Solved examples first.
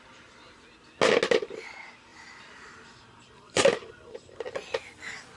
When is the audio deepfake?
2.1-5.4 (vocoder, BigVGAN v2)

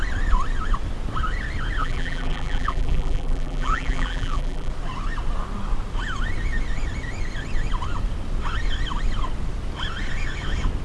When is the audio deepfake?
1.8-4.7 (vocoder, BigVGAN v2)

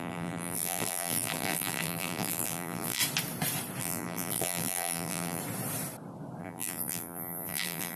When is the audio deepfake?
0.0-3.0 (vocoder, BigVGAN v2); 3.8-5.4; 6.4-8.0

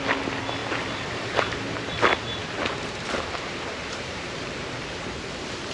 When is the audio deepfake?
0.6-1.9 (vocoder, BigVGAN v2); 2.4-5.3

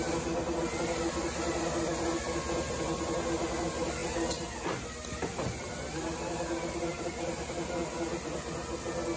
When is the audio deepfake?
none

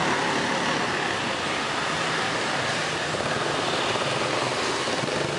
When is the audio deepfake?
2.8-4.3 (vocoder, BigVGAN v2)

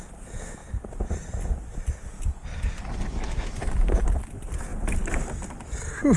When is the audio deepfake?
none

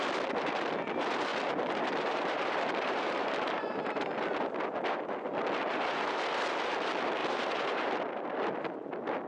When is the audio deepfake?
1.3-4.1 (vocoder, BigVGAN v2); 7.2-8.1